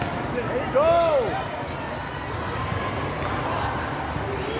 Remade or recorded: recorded